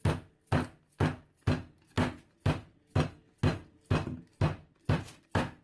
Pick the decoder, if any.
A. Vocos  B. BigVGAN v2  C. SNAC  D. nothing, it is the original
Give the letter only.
D